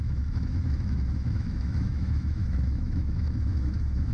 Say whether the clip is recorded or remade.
remade